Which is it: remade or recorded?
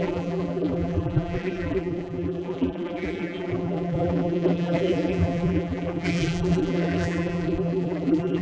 remade